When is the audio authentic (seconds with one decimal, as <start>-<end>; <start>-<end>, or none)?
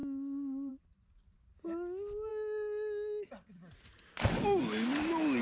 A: 0.0-5.4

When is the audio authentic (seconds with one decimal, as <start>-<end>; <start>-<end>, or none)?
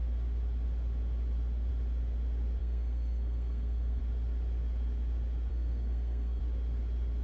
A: 0.0-2.6; 4.0-5.5; 6.4-7.2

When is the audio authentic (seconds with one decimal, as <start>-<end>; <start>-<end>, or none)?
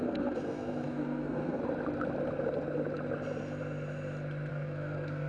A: 1.6-4.5